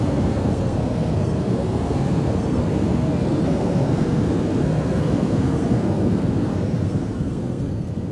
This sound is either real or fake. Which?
fake